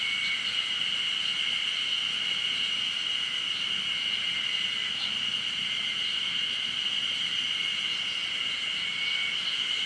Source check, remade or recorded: recorded